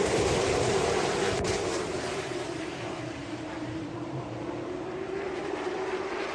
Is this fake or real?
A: fake